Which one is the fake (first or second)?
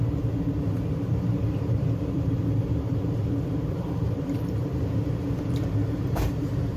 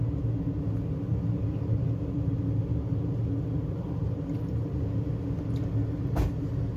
first